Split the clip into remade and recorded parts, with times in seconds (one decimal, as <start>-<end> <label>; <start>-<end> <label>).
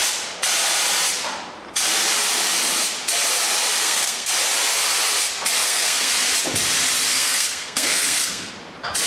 0.0-3.8 recorded; 3.8-4.3 remade; 4.3-5.6 recorded; 5.6-6.1 remade; 6.1-7.1 recorded; 7.1-8.5 remade; 8.5-9.1 recorded